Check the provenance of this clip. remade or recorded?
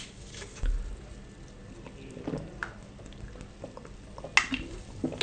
recorded